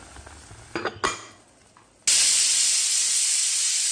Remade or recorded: recorded